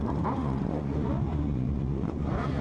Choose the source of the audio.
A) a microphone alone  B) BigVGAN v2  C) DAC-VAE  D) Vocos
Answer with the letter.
D